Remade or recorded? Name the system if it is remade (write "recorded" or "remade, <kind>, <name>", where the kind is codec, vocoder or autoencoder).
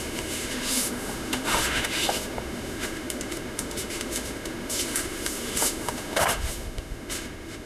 remade, autoencoder, DAC-VAE